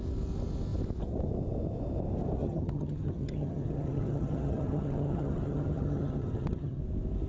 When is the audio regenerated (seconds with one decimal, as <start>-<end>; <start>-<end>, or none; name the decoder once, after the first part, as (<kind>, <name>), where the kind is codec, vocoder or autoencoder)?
2.4-6.8 (vocoder, HiFi-GAN)

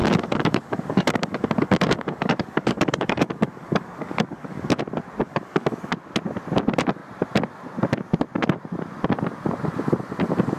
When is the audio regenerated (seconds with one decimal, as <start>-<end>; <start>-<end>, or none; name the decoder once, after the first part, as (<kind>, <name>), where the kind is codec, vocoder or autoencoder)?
0.0-4.8 (codec, DAC); 5.2-5.9

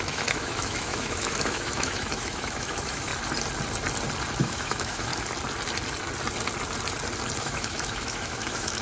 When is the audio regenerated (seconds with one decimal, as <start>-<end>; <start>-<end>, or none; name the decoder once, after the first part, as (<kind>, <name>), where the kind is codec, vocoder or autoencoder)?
0.0-3.1 (autoencoder, DAC-VAE); 4.4-5.1; 7.4-8.8

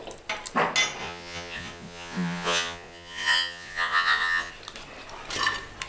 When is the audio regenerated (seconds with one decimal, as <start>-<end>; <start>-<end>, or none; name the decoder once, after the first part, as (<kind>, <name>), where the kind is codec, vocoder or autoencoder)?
1.0-4.5 (vocoder, Vocos)